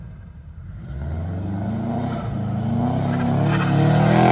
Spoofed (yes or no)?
no